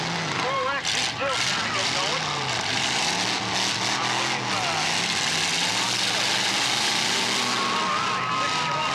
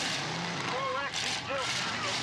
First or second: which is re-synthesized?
second